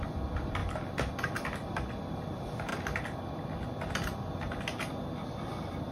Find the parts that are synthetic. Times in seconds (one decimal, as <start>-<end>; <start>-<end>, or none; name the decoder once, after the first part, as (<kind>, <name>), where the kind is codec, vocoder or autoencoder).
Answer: none